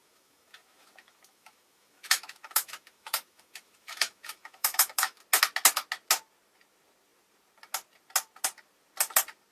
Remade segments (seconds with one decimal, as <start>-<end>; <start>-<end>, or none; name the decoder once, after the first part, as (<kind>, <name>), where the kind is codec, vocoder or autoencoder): 0.0-5.2 (autoencoder, DAC-VAE)